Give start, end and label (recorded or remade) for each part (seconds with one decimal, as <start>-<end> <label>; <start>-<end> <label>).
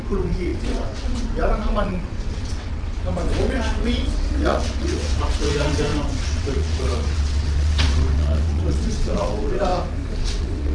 0.0-9.7 remade; 9.7-10.2 recorded; 10.2-10.7 remade